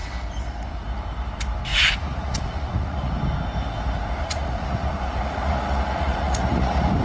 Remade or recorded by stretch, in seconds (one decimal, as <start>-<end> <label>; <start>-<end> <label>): 0.0-1.7 recorded; 1.7-3.1 remade; 3.1-4.2 recorded; 4.2-7.0 remade